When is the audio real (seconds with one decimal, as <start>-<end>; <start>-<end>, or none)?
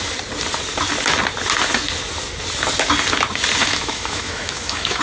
0.0-3.6